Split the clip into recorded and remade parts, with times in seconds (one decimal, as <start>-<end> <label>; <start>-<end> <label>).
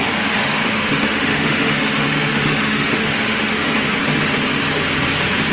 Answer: 0.0-0.4 recorded; 0.4-3.7 remade; 3.7-5.5 recorded